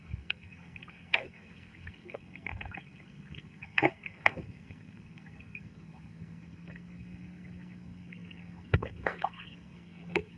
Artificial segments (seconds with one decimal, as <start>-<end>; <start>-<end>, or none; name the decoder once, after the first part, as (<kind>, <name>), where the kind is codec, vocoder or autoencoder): 0.0-10.4 (codec, SNAC)